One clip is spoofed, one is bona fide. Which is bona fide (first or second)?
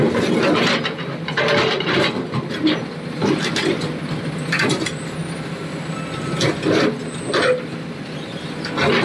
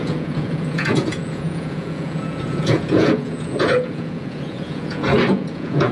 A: first